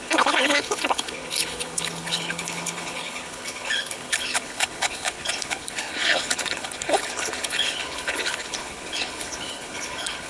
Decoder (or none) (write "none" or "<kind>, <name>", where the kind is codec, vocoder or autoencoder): codec, HILCodec